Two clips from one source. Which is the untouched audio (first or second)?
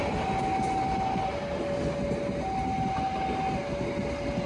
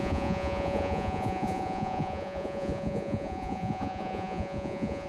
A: first